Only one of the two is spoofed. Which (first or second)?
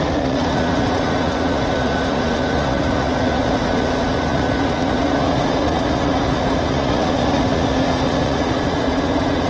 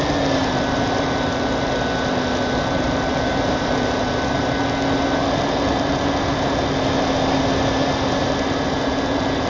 first